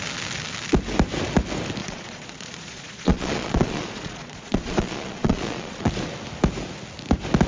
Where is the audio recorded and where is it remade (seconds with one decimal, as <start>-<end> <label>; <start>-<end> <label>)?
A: 0.0-1.8 recorded; 1.8-5.9 remade; 5.9-7.5 recorded